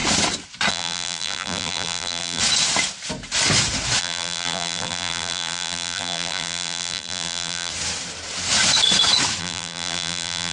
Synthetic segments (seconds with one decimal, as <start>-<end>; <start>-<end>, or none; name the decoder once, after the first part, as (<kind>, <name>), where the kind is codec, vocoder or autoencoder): 0.7-2.4 (vocoder, BigVGAN v2); 4.0-7.7; 9.4-10.5